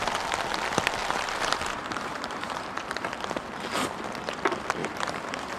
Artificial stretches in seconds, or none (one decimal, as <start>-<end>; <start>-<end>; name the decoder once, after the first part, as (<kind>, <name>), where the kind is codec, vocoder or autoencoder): 1.0-2.9 (vocoder, BigVGAN v2); 4.8-5.6